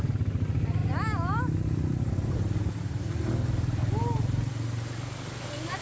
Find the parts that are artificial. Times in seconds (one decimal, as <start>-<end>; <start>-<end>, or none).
none